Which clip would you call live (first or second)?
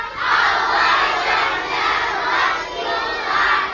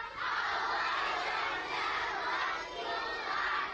first